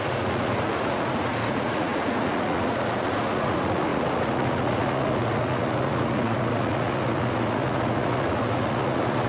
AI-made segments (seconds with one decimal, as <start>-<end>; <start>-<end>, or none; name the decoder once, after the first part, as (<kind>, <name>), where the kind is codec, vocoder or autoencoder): 0.0-9.3 (vocoder, Vocos)